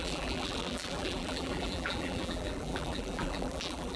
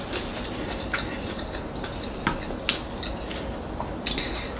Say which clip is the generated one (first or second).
first